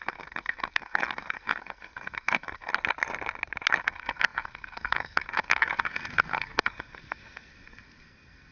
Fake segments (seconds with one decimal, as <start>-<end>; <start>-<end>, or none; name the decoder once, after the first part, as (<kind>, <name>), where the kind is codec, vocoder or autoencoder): 0.0-2.7 (codec, SNAC); 3.8-8.5